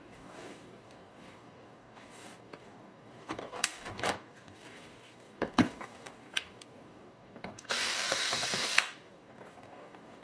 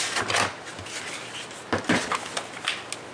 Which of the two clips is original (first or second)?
second